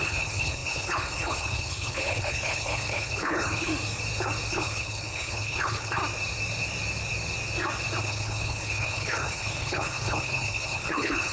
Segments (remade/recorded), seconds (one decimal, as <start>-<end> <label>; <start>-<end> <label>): 0.0-3.7 remade; 3.7-4.5 recorded; 4.5-6.0 remade; 6.0-8.0 recorded; 8.0-11.3 remade